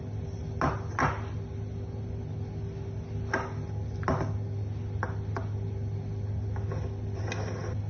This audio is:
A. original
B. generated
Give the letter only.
A